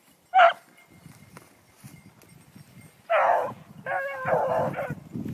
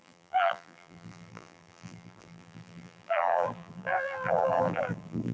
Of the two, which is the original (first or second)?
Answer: first